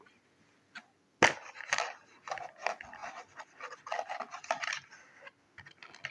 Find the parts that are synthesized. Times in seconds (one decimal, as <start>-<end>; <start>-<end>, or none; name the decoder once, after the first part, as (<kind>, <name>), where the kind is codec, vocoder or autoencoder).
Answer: none